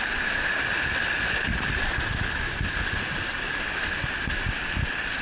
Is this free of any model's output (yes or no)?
yes